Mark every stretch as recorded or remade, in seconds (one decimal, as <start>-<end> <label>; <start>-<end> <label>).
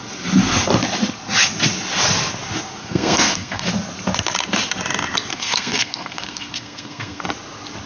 0.0-2.8 recorded; 2.8-3.7 remade; 3.7-5.3 recorded; 5.3-7.2 remade; 7.2-7.9 recorded